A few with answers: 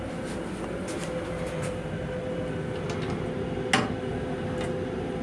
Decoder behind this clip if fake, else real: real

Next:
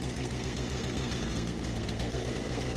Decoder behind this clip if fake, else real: fake, codec, SNAC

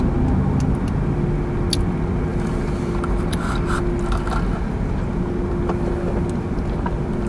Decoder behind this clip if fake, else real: real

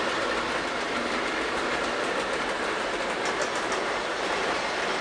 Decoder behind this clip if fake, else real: real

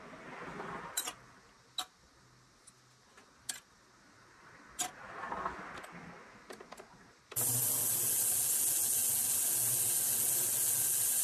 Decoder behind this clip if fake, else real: real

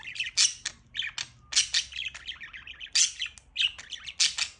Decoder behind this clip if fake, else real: real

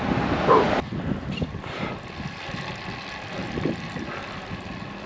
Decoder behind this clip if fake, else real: real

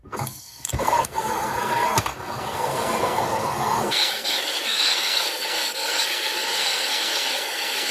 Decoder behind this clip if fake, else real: fake, codec, SNAC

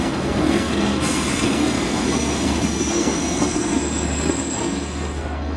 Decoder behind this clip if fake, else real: fake, codec, SNAC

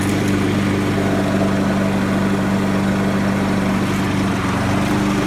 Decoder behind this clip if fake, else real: real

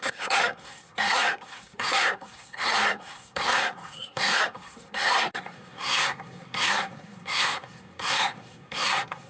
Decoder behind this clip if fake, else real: fake, codec, SNAC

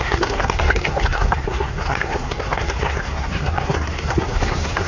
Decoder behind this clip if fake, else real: fake, codec, SNAC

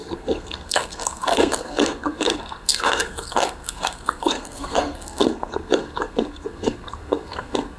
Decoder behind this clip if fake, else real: fake, codec, SNAC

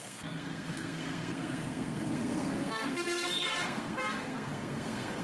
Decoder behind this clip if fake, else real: fake, codec, SNAC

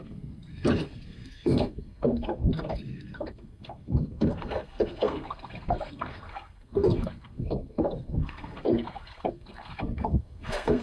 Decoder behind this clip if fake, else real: fake, codec, SNAC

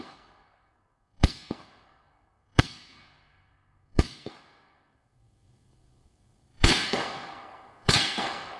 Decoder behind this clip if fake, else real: fake, codec, SNAC